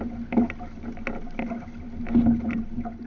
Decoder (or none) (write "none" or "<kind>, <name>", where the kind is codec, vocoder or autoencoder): none